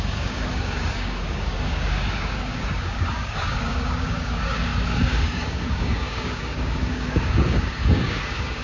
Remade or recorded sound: remade